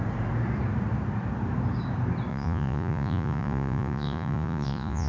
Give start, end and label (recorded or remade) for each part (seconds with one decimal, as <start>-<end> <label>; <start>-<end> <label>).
0.0-2.3 recorded; 2.3-5.1 remade